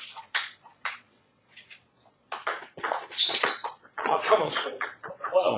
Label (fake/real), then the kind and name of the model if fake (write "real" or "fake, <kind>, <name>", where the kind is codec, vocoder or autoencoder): fake, vocoder, Vocos